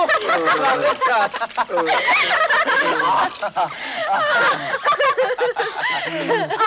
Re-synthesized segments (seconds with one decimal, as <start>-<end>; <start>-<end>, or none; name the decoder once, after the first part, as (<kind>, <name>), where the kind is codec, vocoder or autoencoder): none